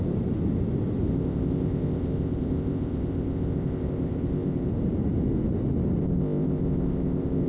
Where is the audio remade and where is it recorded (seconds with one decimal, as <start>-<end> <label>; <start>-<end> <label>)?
0.0-1.1 recorded; 1.1-4.7 remade; 4.7-6.0 recorded; 6.0-7.5 remade